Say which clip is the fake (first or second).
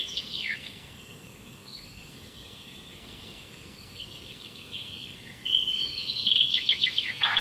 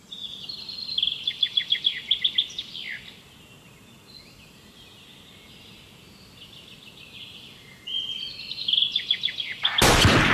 first